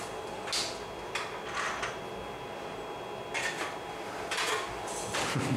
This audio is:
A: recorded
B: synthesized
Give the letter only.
A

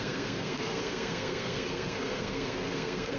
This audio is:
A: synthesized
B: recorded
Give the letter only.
A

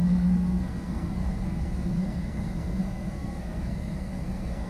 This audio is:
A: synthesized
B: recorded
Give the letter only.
A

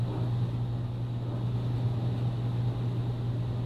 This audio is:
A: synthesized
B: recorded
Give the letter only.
B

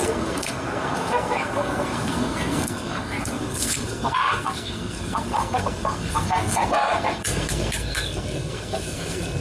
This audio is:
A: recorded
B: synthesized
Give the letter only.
B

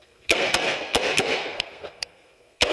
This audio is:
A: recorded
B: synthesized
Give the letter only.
B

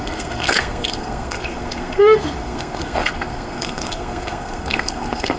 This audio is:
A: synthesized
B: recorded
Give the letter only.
A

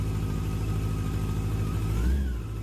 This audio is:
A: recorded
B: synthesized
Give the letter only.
A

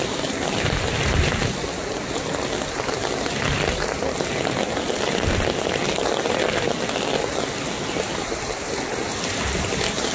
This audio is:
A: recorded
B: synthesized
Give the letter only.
A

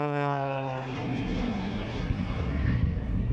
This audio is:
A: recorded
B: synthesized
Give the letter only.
B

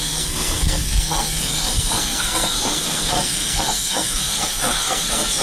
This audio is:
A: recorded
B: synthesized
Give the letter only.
B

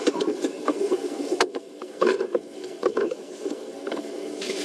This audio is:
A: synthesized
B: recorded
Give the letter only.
A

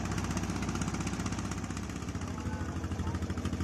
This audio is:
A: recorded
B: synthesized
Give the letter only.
A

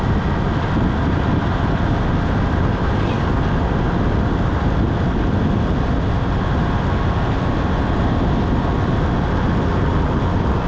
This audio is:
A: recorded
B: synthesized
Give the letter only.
A